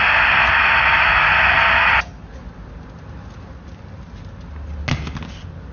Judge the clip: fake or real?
real